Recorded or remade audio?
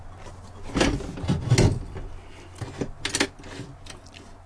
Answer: recorded